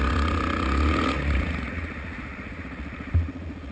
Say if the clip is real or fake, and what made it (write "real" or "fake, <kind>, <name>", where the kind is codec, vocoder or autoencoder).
fake, vocoder, Vocos